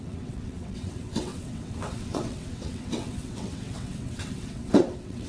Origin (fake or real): fake